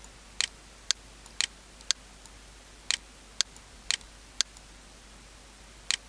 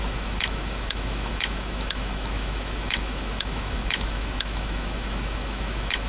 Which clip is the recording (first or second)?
first